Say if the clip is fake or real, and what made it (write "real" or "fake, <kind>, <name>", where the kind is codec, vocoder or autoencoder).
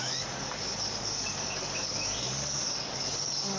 fake, codec, DAC